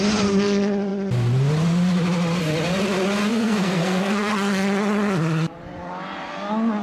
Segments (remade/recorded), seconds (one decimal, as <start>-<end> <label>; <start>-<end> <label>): 0.0-3.3 recorded; 3.3-4.3 remade; 4.3-6.8 recorded